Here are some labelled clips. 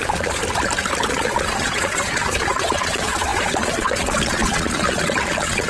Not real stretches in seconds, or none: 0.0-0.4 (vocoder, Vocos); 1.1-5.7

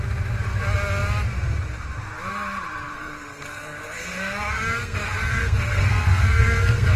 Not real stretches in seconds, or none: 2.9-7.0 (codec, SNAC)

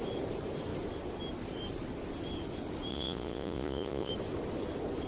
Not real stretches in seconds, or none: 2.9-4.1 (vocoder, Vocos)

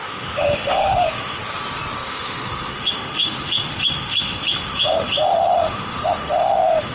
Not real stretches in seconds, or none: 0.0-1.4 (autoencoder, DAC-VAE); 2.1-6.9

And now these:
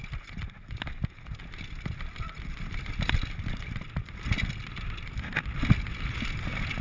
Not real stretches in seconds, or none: none

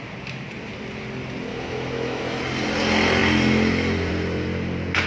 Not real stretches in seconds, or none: 1.5-2.4 (autoencoder, DAC-VAE)

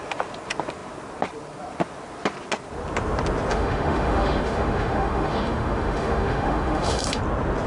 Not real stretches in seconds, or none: 3.5-7.2 (autoencoder, DAC-VAE)